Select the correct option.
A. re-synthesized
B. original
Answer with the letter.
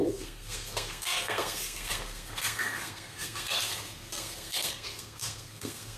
A